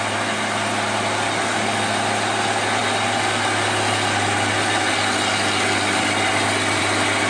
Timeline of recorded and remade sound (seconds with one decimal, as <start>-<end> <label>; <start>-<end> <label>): 0.0-7.3 recorded